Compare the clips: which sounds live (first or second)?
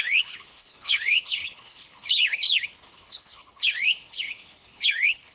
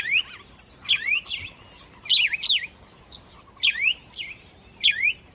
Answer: second